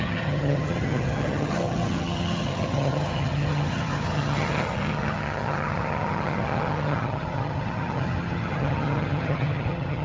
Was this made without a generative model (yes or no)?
no